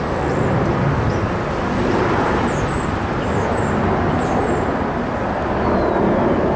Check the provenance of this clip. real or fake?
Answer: real